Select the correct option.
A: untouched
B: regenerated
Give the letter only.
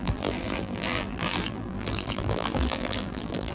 B